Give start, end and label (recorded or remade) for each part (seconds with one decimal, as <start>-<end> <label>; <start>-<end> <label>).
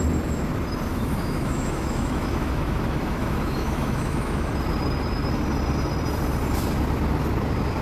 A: 0.0-0.9 recorded; 0.9-4.5 remade; 4.5-7.8 recorded